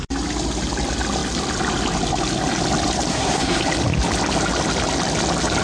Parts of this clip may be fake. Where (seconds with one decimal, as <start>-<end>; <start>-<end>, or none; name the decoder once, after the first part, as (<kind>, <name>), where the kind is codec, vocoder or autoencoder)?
3.1-3.6 (codec, SNAC)